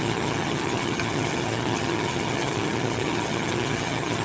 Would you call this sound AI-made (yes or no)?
yes